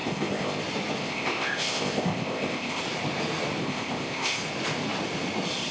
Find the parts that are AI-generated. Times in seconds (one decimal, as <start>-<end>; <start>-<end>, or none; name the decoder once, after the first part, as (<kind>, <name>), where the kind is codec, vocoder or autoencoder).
0.0-0.6 (codec, ZipCodec); 1.0-2.8; 3.6-4.4